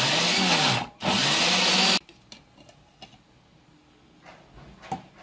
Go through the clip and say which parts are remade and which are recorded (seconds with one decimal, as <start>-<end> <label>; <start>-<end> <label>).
0.0-5.2 recorded